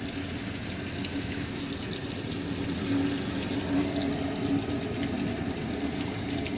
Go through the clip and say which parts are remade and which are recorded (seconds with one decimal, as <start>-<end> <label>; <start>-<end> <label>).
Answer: 0.0-1.1 recorded; 1.1-1.6 remade; 1.6-6.6 recorded